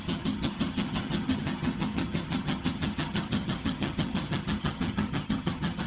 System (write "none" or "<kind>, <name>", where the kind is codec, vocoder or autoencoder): vocoder, HiFi-GAN